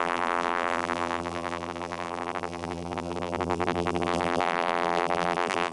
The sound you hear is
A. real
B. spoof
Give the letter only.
B